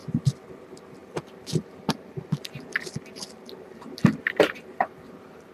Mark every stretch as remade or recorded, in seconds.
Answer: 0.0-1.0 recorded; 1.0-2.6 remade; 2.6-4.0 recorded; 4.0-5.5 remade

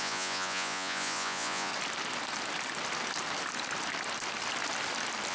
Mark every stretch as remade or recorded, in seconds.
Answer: 0.0-1.7 remade; 1.7-5.3 recorded

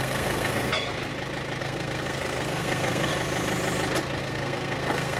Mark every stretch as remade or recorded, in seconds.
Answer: 0.0-1.1 remade; 1.1-1.6 recorded; 1.6-3.1 remade; 3.1-4.2 recorded; 4.2-5.2 remade